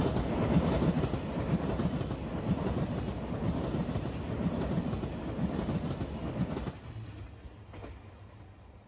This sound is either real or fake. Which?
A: real